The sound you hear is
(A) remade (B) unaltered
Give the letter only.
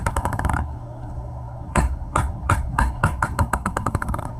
A